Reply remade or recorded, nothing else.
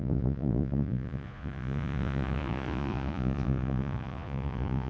remade